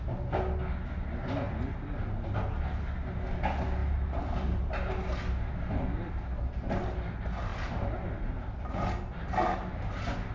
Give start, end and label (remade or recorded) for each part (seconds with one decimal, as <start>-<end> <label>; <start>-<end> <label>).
0.0-10.3 recorded